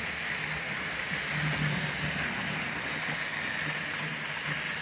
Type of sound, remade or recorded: recorded